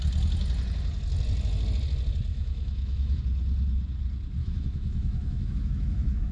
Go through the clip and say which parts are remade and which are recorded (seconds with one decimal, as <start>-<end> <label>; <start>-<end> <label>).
0.0-2.3 recorded; 2.3-3.2 remade; 3.2-4.4 recorded; 4.4-6.3 remade